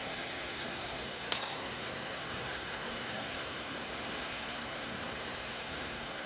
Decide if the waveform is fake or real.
fake